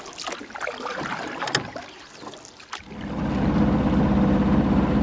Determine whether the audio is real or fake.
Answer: real